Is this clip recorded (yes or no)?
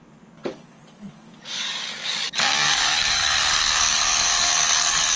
no